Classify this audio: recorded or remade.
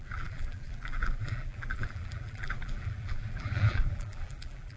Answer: remade